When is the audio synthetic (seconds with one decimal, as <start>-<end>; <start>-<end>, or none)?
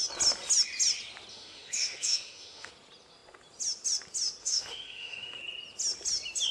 1.3-2.7; 4.4-5.4